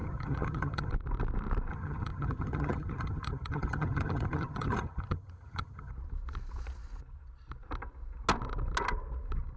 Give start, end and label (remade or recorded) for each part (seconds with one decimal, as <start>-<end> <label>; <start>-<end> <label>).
0.0-0.9 remade; 0.9-1.7 recorded; 1.7-5.9 remade; 5.9-9.6 recorded

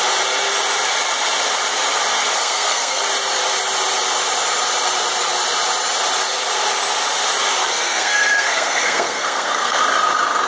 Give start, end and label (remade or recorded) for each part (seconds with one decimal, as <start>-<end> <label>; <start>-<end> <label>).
0.0-2.4 recorded; 2.4-3.0 remade; 3.0-7.6 recorded; 7.6-9.8 remade; 9.8-10.5 recorded

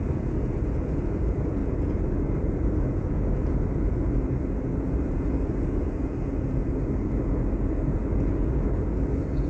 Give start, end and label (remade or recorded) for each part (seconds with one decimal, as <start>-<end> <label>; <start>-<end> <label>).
0.0-9.5 remade